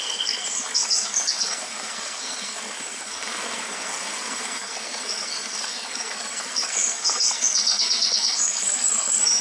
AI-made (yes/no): yes